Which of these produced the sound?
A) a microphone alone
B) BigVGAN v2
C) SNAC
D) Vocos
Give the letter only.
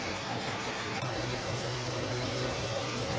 C